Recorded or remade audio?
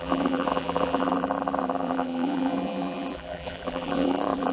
remade